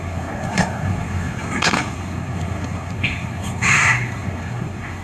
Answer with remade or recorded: remade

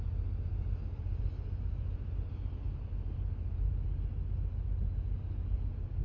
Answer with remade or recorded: recorded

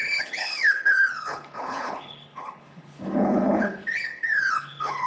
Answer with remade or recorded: remade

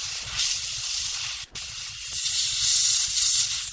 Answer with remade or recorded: recorded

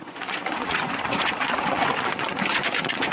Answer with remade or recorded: remade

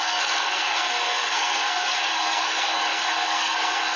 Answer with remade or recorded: remade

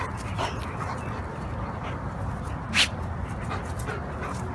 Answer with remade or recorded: recorded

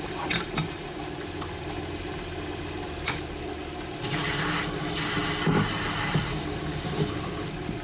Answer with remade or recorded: recorded